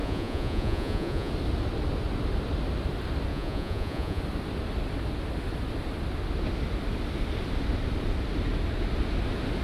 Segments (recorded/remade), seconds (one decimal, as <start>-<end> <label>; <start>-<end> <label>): 0.0-1.3 remade; 1.3-3.3 recorded; 3.3-4.2 remade; 4.2-9.6 recorded